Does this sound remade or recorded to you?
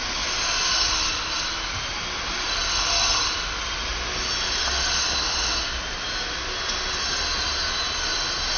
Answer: recorded